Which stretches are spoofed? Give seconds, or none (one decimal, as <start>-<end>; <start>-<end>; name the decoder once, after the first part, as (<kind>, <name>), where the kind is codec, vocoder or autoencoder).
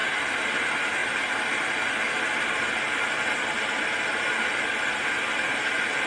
none